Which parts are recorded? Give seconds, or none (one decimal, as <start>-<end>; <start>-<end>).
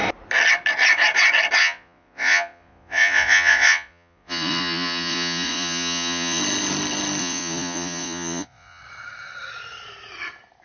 0.0-1.6; 6.4-7.2; 8.8-10.6